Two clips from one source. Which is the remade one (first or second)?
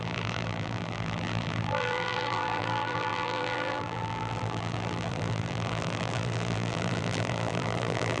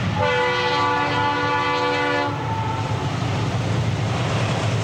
first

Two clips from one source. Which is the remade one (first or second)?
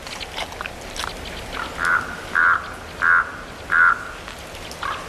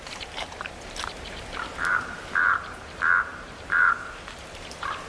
second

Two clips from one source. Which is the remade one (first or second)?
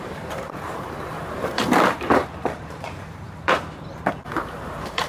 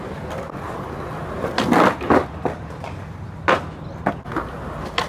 first